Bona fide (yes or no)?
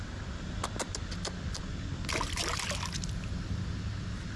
yes